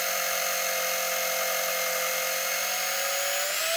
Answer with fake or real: real